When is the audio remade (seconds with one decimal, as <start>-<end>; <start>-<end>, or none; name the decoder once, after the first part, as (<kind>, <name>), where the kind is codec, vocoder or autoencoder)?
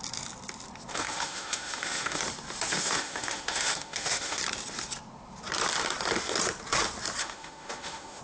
0.9-2.2 (autoencoder, DAC-VAE); 2.7-4.4; 7.2-8.2